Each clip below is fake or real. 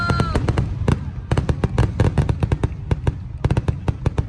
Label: real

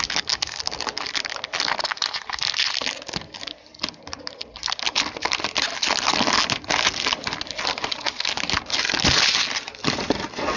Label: real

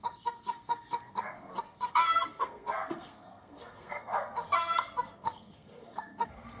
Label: fake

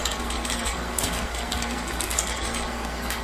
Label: fake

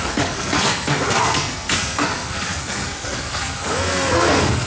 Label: fake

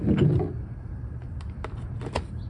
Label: real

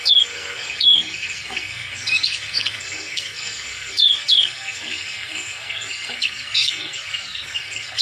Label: fake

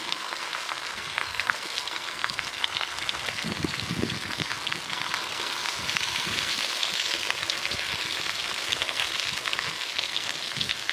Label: fake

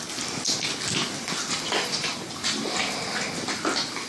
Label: real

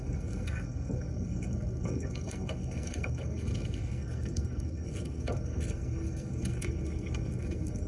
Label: fake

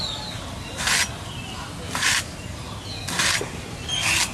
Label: real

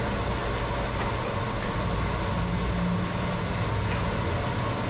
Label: real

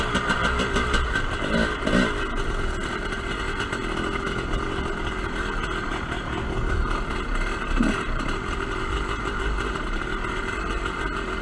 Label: real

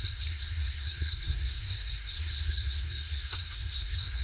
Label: fake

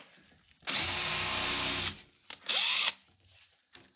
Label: real